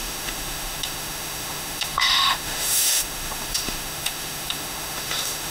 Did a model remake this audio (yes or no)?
yes